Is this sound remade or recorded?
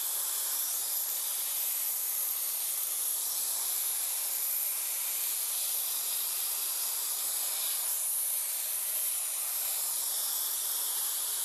remade